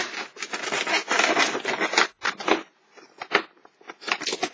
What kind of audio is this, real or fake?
real